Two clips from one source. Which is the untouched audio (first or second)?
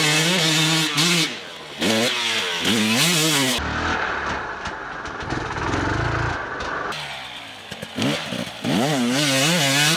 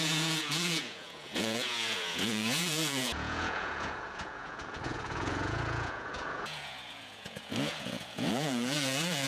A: first